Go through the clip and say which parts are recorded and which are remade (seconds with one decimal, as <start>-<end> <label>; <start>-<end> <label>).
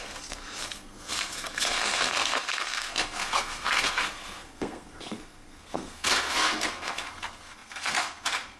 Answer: 0.0-8.6 remade